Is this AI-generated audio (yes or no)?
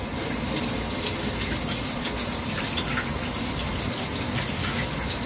no